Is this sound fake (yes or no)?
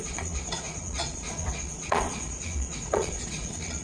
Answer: yes